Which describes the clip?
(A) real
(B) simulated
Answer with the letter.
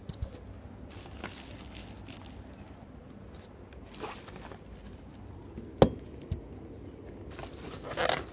A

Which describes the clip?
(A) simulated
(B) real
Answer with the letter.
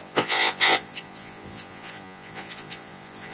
A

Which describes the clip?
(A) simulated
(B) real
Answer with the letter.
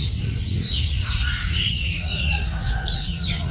A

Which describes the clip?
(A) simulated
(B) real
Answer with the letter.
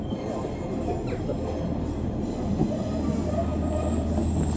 B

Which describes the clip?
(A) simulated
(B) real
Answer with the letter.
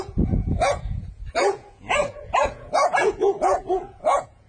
A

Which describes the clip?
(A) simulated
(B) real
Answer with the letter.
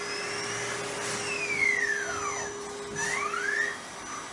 B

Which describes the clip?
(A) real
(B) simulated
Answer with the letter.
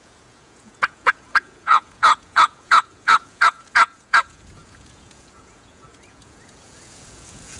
B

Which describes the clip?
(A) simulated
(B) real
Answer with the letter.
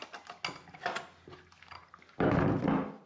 B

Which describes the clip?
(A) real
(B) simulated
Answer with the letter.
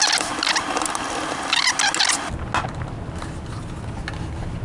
A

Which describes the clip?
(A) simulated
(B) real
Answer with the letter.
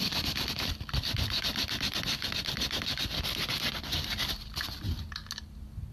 B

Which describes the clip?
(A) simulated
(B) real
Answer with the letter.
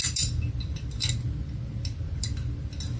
B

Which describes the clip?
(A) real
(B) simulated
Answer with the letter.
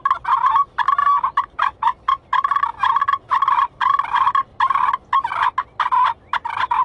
A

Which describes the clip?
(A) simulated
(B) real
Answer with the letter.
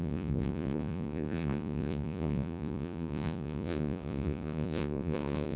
A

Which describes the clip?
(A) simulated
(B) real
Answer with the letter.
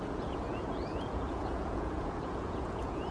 A